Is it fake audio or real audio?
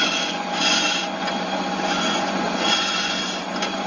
fake